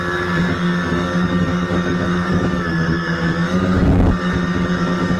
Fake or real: fake